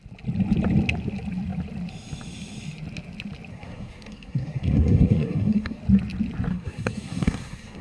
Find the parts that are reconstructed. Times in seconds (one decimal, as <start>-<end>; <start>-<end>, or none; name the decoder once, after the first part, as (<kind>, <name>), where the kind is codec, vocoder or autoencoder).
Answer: 3.5-5.8 (codec, SNAC); 6.5-7.8